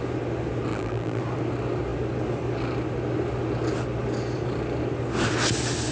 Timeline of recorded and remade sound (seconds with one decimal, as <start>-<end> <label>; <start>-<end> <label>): 0.0-0.7 recorded; 0.7-1.2 remade; 1.2-5.9 recorded